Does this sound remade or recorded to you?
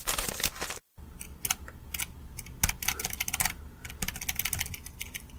recorded